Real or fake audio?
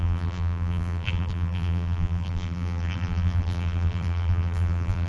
fake